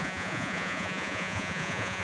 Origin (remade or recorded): remade